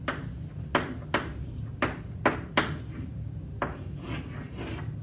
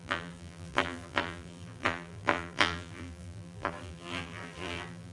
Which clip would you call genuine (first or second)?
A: first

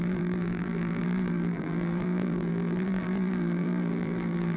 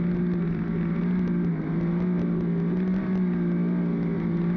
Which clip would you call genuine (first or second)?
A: second